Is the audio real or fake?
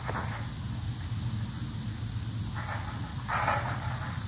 real